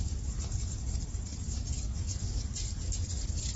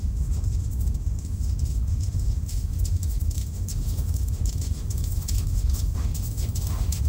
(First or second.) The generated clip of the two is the second